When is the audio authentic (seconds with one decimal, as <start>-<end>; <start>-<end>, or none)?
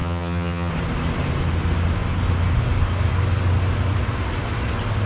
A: 0.7-5.1